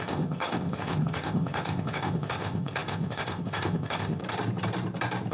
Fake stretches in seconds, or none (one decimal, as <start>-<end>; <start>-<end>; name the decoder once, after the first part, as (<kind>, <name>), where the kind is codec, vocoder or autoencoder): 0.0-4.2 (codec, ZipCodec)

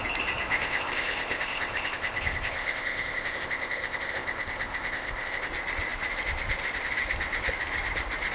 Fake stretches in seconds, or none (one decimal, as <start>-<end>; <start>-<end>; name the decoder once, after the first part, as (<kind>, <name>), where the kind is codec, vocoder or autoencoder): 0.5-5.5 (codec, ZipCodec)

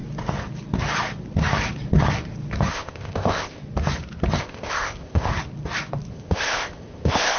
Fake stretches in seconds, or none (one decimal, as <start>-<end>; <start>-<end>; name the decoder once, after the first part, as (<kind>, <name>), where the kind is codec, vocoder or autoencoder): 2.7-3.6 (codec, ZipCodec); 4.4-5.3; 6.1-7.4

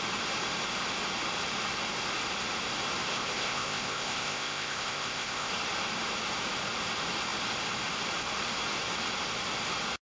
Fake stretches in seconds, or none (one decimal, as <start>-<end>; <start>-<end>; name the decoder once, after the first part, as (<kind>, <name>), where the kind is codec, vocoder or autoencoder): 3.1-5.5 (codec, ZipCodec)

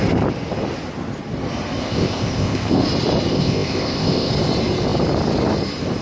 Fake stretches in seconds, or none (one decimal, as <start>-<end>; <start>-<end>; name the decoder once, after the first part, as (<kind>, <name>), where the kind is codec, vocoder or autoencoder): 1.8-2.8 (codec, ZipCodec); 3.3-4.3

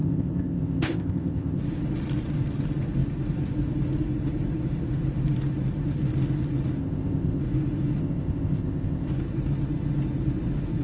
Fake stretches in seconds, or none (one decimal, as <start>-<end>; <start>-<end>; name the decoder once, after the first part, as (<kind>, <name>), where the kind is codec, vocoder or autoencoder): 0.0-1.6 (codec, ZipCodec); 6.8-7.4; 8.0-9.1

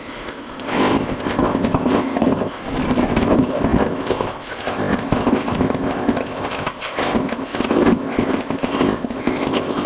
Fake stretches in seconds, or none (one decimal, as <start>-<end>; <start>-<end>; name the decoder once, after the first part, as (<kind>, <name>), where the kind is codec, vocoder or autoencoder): 0.0-2.6 (codec, ZipCodec); 3.1-9.9